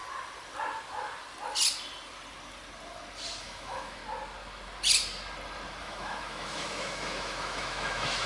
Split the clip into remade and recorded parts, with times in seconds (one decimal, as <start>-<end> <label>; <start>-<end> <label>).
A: 0.0-3.4 recorded; 3.4-4.0 remade; 4.0-5.8 recorded; 5.8-8.3 remade